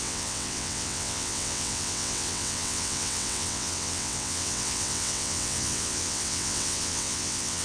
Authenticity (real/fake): fake